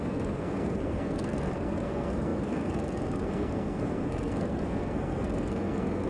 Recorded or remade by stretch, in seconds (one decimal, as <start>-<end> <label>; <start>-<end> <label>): 0.0-6.1 remade